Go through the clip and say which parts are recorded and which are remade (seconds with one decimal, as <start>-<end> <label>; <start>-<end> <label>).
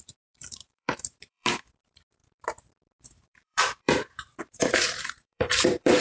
0.0-6.0 remade